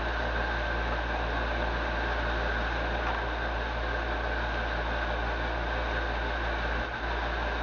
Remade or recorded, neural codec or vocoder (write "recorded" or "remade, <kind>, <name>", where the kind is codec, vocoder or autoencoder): recorded